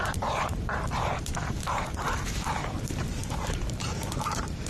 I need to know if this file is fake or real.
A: fake